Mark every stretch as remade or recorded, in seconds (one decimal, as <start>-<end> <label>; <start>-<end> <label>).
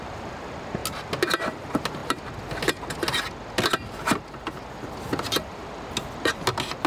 0.0-6.9 recorded